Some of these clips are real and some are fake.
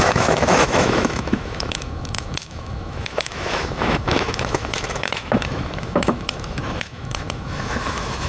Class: fake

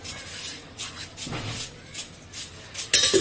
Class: real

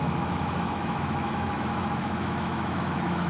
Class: fake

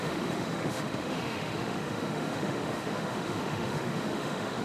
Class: fake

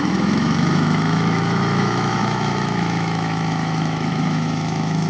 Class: fake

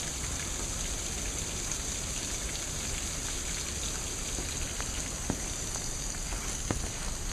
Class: real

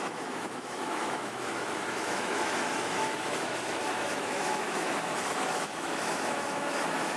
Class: fake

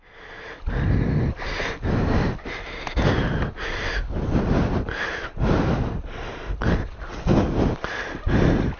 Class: real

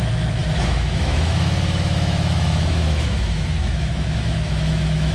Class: fake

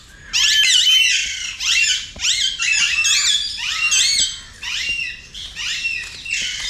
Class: real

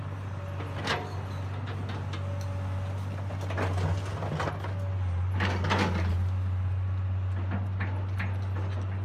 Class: real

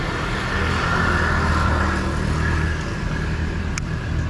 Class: real